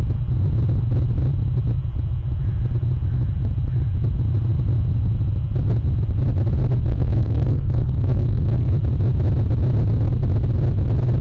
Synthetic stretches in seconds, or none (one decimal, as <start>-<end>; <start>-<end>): 6.9-8.7